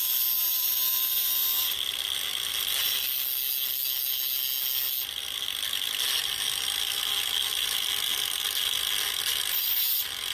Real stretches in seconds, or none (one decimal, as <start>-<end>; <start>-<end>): 0.0-10.3